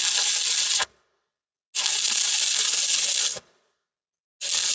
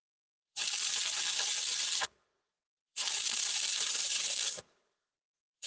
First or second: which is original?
first